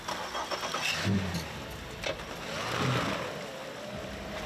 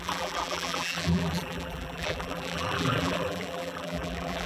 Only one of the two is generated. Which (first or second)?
second